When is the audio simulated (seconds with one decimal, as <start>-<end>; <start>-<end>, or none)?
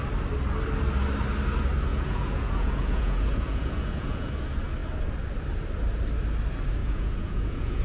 1.9-4.3; 6.8-7.8